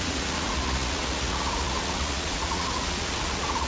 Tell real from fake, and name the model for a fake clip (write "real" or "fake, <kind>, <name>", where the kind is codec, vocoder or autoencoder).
fake, vocoder, Vocos